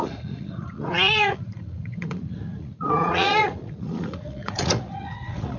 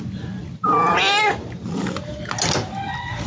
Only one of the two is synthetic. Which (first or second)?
first